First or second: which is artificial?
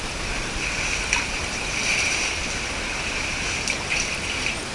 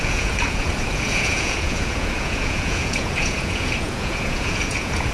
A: second